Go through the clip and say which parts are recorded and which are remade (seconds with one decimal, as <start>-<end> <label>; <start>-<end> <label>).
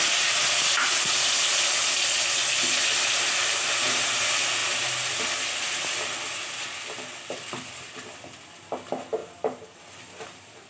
0.0-4.6 recorded; 4.6-5.6 remade; 5.6-9.2 recorded; 9.2-9.8 remade; 9.8-10.7 recorded